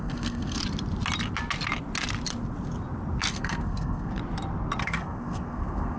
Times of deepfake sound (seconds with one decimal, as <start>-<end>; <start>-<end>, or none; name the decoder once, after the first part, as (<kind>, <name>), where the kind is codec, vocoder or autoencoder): 0.0-0.6 (codec, SNAC); 3.3-4.2; 4.8-6.0